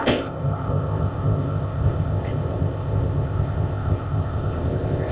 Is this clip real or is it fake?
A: fake